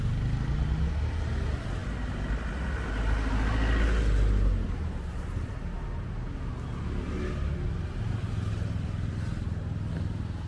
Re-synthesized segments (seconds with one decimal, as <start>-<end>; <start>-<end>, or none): none